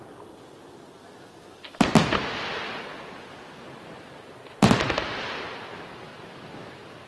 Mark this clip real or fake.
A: real